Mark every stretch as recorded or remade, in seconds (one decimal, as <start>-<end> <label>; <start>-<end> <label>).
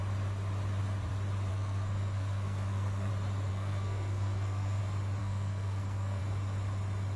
0.0-1.5 recorded; 1.5-3.1 remade; 3.1-3.5 recorded; 3.5-4.8 remade; 4.8-5.2 recorded; 5.2-6.2 remade; 6.2-7.2 recorded